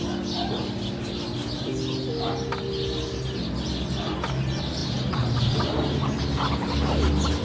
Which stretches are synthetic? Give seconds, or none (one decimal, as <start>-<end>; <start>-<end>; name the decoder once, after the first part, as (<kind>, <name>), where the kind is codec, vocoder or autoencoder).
4.8-6.2 (vocoder, BigVGAN v2)